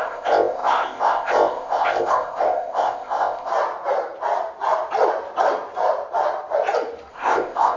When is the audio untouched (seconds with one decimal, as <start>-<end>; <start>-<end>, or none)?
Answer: 3.5-7.1